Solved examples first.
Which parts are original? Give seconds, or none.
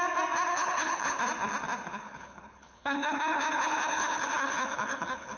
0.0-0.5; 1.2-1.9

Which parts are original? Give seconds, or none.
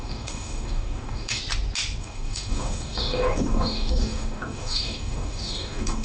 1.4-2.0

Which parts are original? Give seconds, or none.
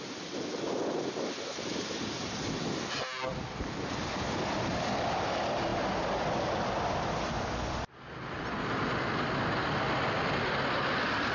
0.0-9.6; 10.2-11.3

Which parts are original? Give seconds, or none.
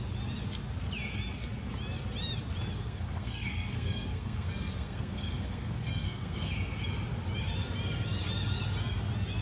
0.0-2.8; 6.5-9.4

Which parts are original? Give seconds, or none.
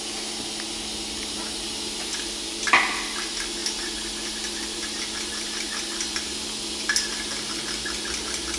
0.0-8.6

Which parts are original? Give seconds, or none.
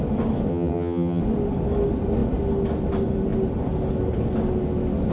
0.0-0.5; 1.2-5.1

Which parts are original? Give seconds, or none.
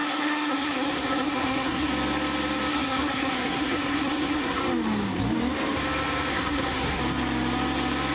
1.9-2.7; 4.6-6.3; 7.0-8.1